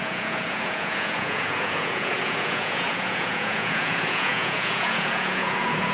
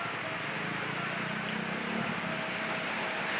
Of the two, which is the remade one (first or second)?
first